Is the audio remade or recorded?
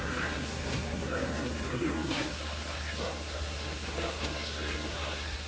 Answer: remade